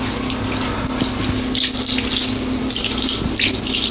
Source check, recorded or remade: recorded